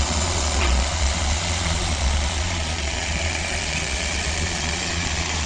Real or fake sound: fake